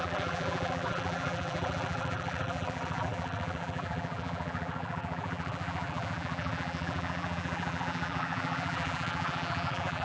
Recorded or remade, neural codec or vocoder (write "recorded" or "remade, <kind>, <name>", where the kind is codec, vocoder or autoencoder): remade, vocoder, BigVGAN v2